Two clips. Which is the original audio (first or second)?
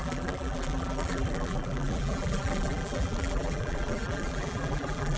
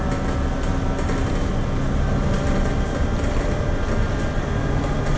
second